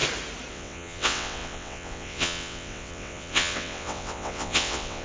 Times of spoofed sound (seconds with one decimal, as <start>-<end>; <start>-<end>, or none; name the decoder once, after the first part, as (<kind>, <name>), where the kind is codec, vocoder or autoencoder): 0.5-5.0 (vocoder, WaveNeXt)